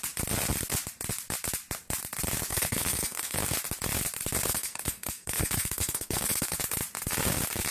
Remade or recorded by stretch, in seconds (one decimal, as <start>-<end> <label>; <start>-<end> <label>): 0.0-2.5 recorded; 2.5-3.4 remade; 3.4-4.5 recorded; 4.5-6.6 remade; 6.6-7.7 recorded